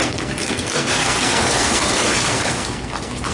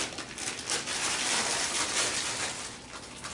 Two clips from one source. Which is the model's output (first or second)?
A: first